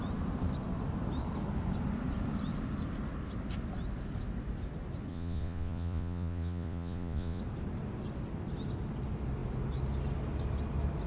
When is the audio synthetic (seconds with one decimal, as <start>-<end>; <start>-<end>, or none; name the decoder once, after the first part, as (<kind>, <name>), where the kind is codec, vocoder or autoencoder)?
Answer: 5.1-7.4 (vocoder, Vocos)